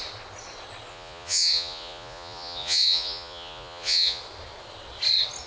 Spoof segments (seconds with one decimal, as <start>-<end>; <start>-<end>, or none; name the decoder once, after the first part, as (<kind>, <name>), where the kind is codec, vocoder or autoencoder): 0.9-4.2 (vocoder, Vocos)